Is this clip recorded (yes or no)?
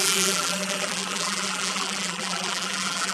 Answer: no